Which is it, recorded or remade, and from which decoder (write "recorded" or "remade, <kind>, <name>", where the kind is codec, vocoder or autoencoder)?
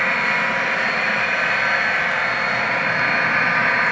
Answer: recorded